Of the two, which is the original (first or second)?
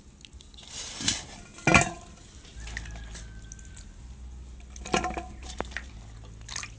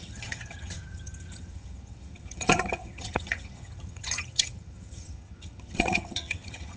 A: first